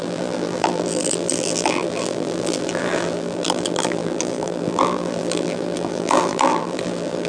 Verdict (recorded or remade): remade